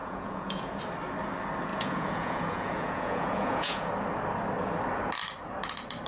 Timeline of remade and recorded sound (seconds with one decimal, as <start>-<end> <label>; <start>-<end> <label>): 0.0-0.8 remade; 0.8-1.7 recorded; 1.7-3.9 remade; 3.9-6.1 recorded